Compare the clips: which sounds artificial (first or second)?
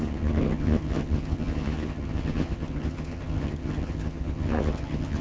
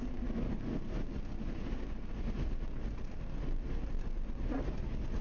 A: first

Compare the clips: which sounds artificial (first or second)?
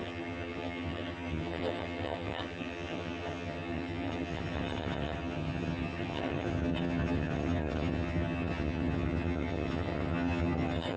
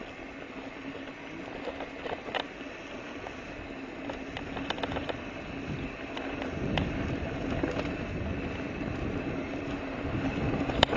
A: first